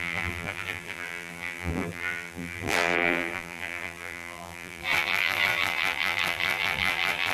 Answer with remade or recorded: remade